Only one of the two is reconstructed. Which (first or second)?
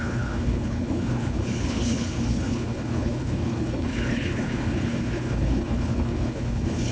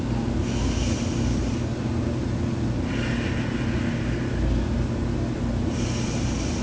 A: first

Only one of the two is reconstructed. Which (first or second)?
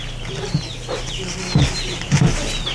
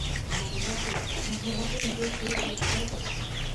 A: second